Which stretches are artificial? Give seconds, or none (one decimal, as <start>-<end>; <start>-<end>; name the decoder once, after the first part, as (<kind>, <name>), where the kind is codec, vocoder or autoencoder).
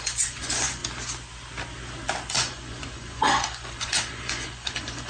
0.0-0.8 (vocoder, Vocos); 2.3-5.1